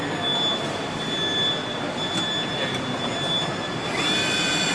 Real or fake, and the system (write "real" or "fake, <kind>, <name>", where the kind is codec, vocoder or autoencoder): real